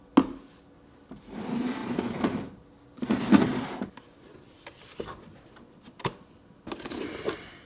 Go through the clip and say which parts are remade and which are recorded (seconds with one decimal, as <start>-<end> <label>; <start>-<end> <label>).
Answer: 0.0-7.7 recorded